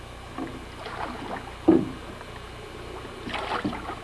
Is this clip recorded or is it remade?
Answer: recorded